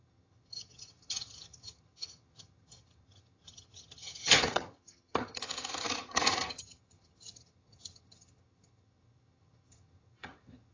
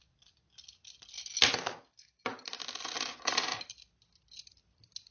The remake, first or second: first